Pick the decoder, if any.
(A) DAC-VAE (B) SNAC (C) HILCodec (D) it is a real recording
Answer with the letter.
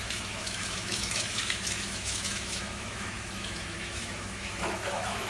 A